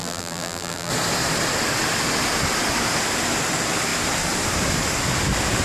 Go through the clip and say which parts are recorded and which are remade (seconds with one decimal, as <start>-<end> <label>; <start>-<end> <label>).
0.0-0.9 remade; 0.9-5.6 recorded

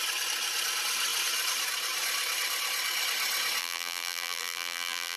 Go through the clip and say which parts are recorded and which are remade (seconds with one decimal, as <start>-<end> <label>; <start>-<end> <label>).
0.0-3.6 recorded; 3.6-5.2 remade

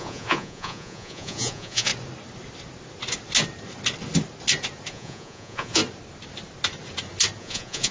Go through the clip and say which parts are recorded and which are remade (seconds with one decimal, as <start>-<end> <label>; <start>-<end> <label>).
0.0-1.9 remade; 1.9-4.9 recorded; 4.9-5.8 remade; 5.8-7.4 recorded; 7.4-7.9 remade

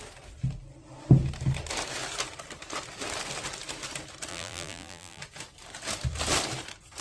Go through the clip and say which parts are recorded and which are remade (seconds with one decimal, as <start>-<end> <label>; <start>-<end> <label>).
0.0-4.3 recorded; 4.3-5.2 remade; 5.2-7.0 recorded

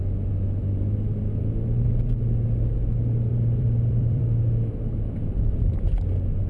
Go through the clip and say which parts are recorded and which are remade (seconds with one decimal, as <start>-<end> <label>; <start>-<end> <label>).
0.0-3.3 recorded; 3.3-4.2 remade; 4.2-6.5 recorded